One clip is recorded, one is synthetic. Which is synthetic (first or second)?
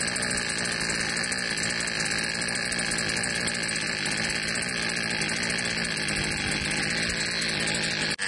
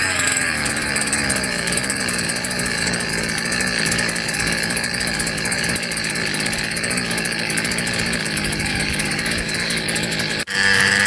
second